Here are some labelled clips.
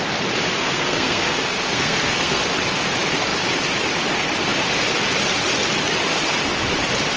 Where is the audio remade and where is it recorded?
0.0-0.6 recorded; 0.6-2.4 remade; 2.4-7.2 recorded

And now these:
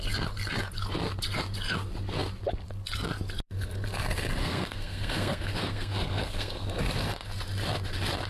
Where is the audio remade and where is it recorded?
0.0-4.4 recorded; 4.4-6.7 remade; 6.7-8.3 recorded

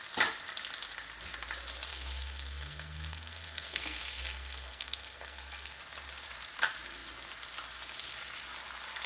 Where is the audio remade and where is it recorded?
0.0-1.9 recorded; 1.9-5.8 remade; 5.8-9.1 recorded

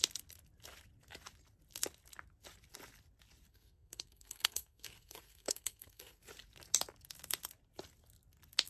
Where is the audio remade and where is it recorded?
0.0-3.5 recorded; 3.5-6.2 remade; 6.2-8.7 recorded

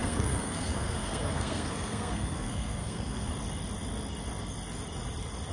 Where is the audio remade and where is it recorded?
0.0-3.3 remade; 3.3-5.5 recorded

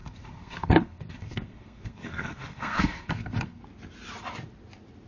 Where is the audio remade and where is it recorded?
0.0-3.6 remade; 3.6-5.1 recorded

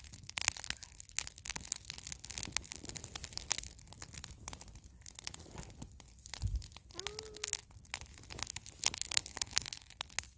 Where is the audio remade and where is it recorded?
0.0-9.3 recorded; 9.3-9.9 remade; 9.9-10.4 recorded

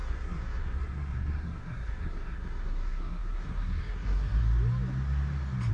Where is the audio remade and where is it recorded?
0.0-4.4 remade; 4.4-5.7 recorded